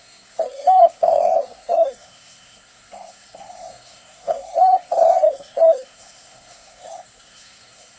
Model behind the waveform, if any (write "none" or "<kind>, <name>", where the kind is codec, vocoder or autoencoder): codec, SNAC